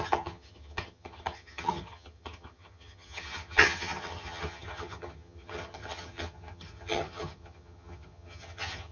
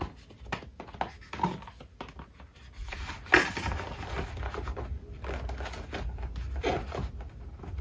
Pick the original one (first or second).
second